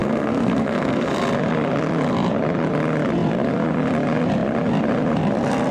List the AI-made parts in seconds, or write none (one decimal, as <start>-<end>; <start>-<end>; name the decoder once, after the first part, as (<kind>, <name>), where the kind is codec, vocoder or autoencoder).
0.0-1.1 (codec, SNAC)